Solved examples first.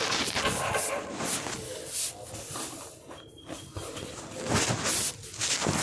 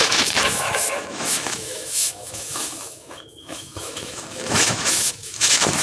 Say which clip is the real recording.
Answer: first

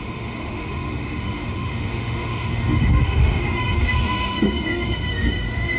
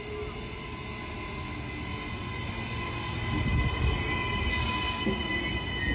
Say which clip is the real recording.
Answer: second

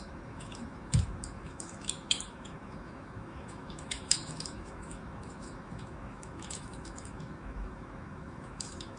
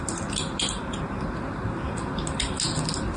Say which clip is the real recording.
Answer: second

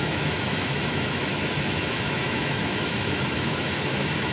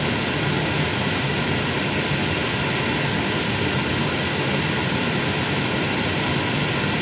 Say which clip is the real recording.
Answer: second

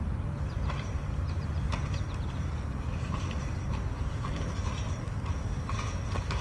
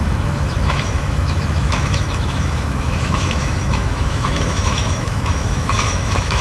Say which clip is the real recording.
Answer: first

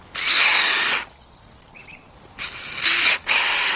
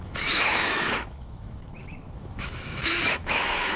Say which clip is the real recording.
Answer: first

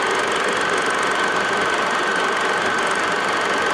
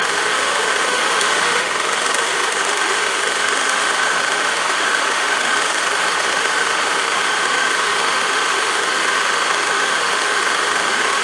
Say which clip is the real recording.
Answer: first